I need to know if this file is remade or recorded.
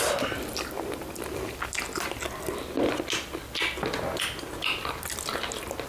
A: recorded